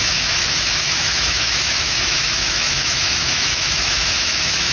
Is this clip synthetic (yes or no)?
yes